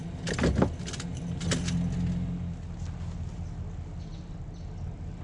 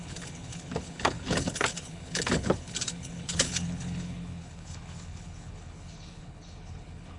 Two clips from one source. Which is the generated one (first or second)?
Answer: second